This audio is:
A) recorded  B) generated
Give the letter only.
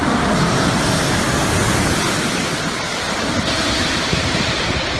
A